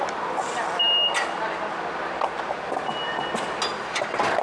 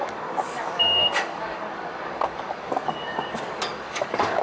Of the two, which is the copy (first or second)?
second